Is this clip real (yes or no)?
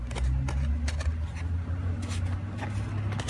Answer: yes